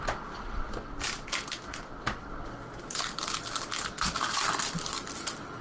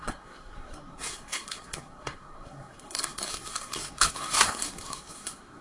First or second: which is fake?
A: second